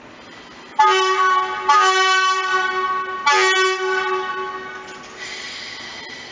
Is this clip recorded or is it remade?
recorded